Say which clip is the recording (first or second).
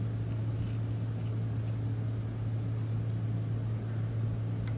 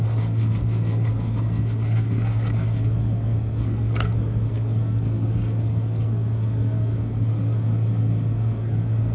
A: first